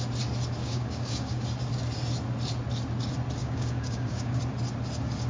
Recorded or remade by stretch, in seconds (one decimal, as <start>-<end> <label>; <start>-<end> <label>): 0.0-0.6 recorded; 0.6-1.4 remade; 1.4-3.4 recorded; 3.4-4.4 remade; 4.4-5.3 recorded